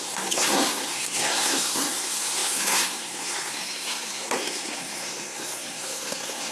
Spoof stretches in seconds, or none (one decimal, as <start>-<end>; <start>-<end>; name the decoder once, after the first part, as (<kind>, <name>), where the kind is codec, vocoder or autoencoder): 0.0-6.5 (codec, SNAC)